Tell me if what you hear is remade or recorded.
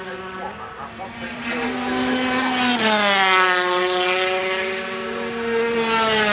recorded